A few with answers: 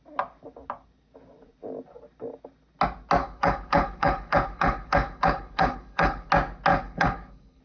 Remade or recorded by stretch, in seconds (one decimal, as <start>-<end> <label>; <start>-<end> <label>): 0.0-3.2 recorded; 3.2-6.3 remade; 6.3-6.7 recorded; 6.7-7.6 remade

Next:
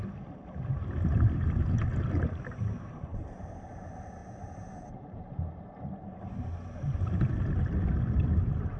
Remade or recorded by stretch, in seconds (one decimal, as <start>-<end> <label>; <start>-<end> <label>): 0.0-4.2 recorded; 4.2-5.6 remade; 5.6-8.8 recorded

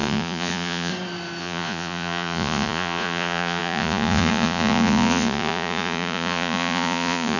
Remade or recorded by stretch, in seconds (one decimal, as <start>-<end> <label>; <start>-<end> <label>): 0.0-0.9 remade; 0.9-1.4 recorded; 1.4-7.4 remade

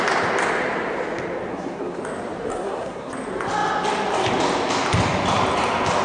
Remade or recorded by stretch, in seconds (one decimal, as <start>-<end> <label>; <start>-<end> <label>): 0.0-1.5 recorded; 1.5-2.0 remade; 2.0-2.5 recorded; 2.5-3.1 remade; 3.1-6.0 recorded

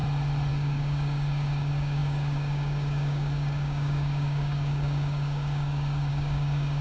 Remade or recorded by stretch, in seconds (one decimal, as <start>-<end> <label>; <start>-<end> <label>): 0.0-0.5 recorded; 0.5-6.8 remade

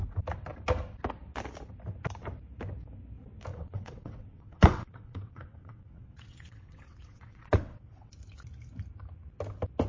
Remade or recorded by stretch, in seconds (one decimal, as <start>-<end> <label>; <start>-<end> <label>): 0.0-3.5 recorded; 3.5-8.1 remade; 8.1-9.9 recorded